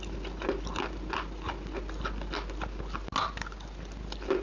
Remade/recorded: recorded